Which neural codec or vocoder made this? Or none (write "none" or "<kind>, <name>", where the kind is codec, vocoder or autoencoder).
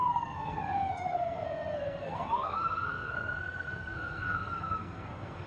codec, SNAC